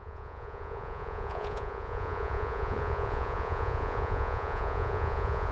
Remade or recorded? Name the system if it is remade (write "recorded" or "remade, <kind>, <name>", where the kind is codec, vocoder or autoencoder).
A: remade, vocoder, Vocos